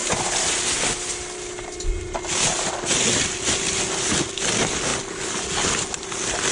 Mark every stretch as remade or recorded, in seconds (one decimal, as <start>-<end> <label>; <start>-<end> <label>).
0.0-6.5 recorded